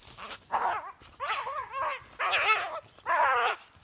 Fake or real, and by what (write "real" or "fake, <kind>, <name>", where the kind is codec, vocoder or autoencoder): real